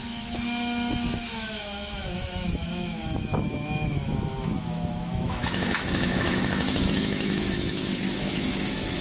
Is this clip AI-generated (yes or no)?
yes